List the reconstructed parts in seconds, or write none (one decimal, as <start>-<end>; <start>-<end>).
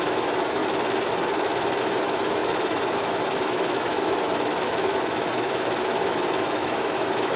0.0-0.6; 1.8-7.4